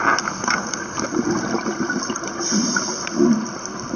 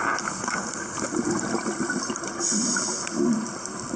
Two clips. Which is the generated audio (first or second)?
first